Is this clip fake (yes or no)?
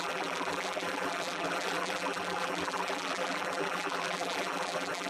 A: yes